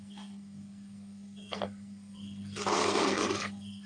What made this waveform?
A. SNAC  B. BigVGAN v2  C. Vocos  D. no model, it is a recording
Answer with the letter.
A